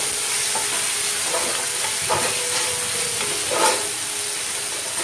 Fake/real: real